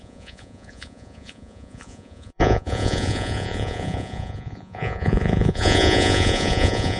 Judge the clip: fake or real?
fake